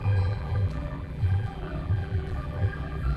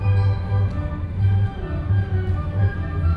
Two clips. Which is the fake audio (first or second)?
first